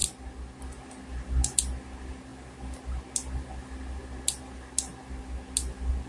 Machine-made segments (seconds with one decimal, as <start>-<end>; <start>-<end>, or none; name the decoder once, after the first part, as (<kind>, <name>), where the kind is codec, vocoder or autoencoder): none